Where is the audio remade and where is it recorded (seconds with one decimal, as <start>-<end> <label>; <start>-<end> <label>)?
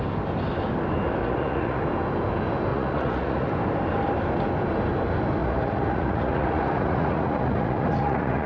0.0-1.2 recorded; 1.2-1.8 remade; 1.8-2.7 recorded; 2.7-3.5 remade; 3.5-5.4 recorded; 5.4-8.5 remade